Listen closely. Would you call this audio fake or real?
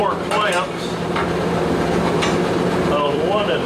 fake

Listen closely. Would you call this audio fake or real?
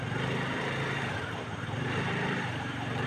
fake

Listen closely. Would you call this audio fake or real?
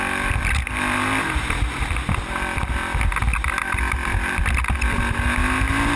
real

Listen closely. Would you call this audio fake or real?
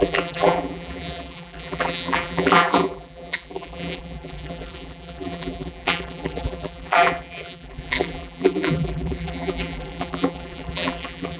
fake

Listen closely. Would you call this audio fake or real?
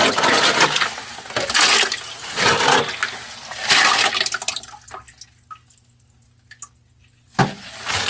real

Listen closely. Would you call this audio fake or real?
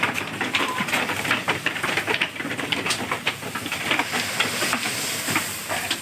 fake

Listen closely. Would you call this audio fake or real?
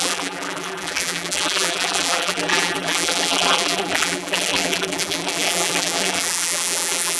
fake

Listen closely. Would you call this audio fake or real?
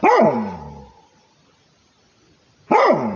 real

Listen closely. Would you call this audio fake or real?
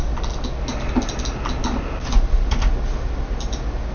real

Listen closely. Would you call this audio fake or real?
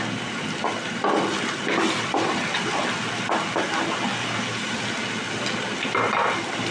real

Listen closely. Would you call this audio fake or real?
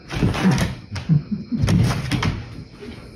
real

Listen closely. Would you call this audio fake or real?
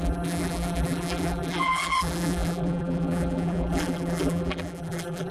fake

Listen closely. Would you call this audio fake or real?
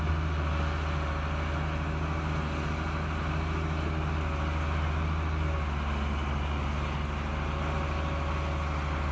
real